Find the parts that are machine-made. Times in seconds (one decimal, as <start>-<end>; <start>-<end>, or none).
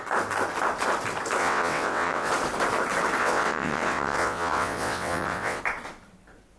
1.4-2.3; 3.2-5.6